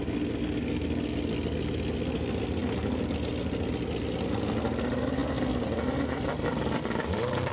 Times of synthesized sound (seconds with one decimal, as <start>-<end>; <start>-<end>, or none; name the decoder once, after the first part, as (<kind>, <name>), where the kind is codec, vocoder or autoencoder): none